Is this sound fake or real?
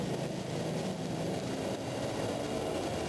real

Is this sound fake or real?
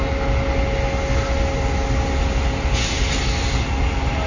real